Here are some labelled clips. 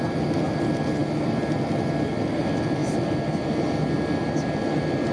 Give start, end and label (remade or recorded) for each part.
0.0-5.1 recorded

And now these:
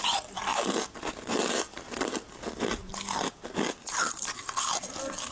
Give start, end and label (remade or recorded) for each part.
0.0-5.3 recorded

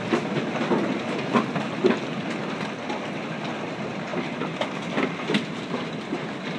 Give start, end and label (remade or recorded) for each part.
0.0-6.6 recorded

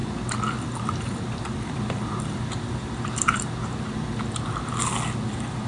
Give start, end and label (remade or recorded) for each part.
0.0-3.4 remade; 3.4-5.7 recorded

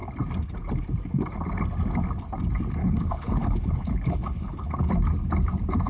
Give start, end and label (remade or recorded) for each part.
0.0-2.8 recorded; 2.8-4.9 remade; 4.9-5.9 recorded

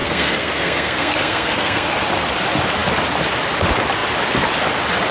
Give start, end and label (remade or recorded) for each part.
0.0-1.9 remade; 1.9-5.1 recorded

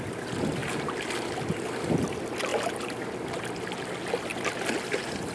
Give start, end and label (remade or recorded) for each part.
0.0-5.3 recorded